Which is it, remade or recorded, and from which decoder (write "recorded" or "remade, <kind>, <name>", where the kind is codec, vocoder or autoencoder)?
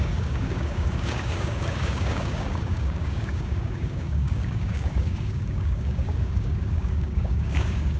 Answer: remade, codec, DAC